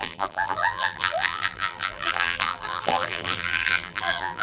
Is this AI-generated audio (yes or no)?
yes